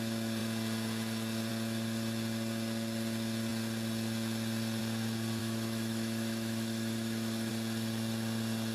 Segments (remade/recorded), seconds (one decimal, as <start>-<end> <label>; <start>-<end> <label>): 0.0-5.4 recorded; 5.4-7.5 remade; 7.5-8.7 recorded